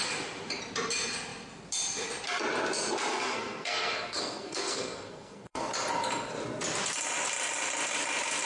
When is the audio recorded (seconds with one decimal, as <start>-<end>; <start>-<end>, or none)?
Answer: 0.0-3.1; 5.7-8.5